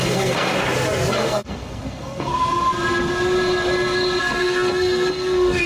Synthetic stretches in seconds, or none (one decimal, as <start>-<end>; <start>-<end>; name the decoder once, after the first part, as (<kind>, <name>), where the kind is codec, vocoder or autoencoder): 0.0-0.5 (codec, SNAC); 1.1-2.3; 4.2-5.7